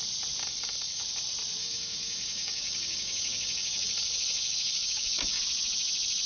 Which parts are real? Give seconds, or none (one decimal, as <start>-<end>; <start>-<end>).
0.0-0.4; 1.0-1.6; 5.4-6.3